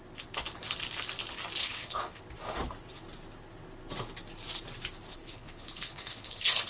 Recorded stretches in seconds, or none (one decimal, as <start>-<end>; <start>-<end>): 0.0-1.6; 2.2-5.1